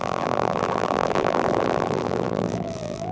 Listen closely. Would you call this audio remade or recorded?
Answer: remade